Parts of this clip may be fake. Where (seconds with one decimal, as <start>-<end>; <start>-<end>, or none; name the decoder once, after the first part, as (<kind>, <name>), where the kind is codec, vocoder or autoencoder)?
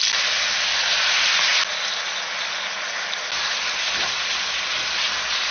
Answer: none